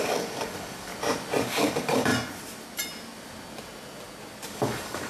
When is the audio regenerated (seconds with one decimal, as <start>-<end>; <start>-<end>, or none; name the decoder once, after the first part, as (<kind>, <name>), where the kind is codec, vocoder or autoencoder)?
0.0-0.9 (codec, DAC); 1.4-2.1; 4.5-5.1